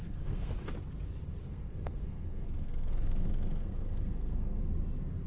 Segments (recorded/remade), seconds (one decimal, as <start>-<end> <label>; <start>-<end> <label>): 0.0-0.5 remade; 0.5-1.4 recorded; 1.4-4.6 remade; 4.6-5.3 recorded